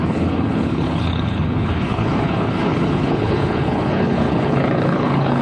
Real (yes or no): no